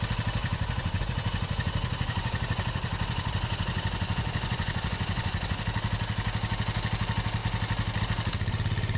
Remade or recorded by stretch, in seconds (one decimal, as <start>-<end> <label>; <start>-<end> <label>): 0.0-0.4 recorded; 0.4-5.6 remade; 5.6-9.0 recorded